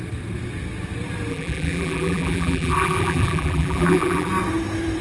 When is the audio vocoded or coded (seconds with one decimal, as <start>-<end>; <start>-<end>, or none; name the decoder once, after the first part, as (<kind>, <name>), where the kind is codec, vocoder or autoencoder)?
1.3-4.3 (vocoder, BigVGAN v2)